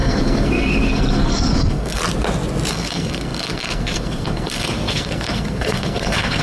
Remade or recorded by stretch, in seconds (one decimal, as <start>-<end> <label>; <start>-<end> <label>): 0.0-2.0 remade; 2.0-2.7 recorded; 2.7-6.4 remade